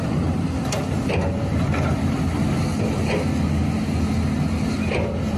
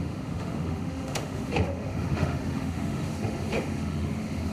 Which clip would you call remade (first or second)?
second